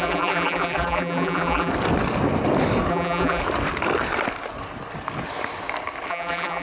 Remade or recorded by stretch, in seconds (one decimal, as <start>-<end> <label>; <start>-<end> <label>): 0.0-1.7 remade; 1.7-2.9 recorded; 2.9-3.4 remade; 3.4-6.1 recorded; 6.1-6.6 remade